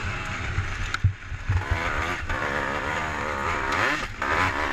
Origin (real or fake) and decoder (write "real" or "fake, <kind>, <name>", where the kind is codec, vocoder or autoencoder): real